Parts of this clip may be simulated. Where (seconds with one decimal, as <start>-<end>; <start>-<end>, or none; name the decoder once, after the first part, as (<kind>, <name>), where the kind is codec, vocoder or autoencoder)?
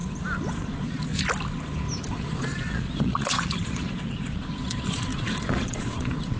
0.5-1.1 (vocoder, Vocos); 2.1-6.4